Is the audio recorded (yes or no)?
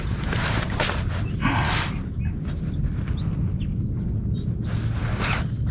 yes